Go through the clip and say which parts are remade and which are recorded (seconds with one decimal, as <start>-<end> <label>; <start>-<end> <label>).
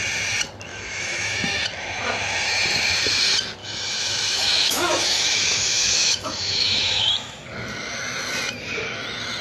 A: 0.0-0.7 recorded; 0.7-1.6 remade; 1.6-3.6 recorded; 3.6-7.1 remade; 7.1-9.4 recorded